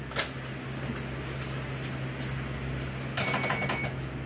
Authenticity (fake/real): real